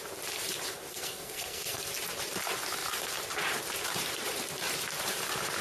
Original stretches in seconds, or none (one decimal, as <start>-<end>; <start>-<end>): 0.0-0.9; 1.9-5.6